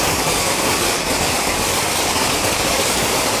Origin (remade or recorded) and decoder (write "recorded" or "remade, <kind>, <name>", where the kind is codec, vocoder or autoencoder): remade, codec, DAC